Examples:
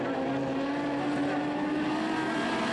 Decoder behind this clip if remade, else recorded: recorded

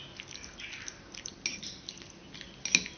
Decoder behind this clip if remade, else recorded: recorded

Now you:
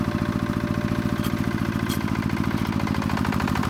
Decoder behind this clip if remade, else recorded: recorded